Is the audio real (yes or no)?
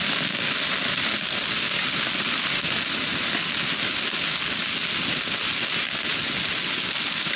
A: yes